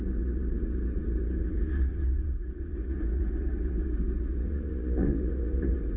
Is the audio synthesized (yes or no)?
yes